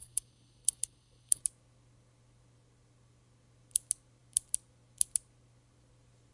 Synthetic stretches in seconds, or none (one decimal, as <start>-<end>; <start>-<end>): 0.0-1.4